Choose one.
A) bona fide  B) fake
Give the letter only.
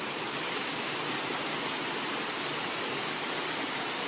B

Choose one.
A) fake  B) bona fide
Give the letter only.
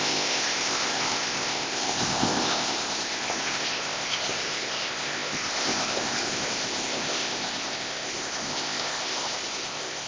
A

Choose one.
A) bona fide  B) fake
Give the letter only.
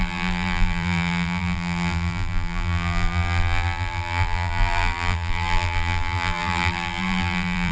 B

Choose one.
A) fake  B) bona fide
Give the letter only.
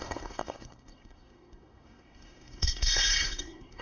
A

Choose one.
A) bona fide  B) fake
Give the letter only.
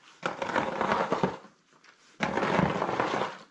A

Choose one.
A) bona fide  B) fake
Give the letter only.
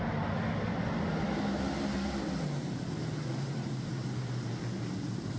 A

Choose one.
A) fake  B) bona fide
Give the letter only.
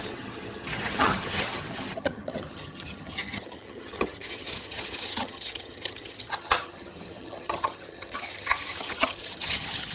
A